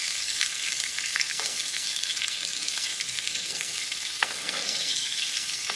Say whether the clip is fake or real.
fake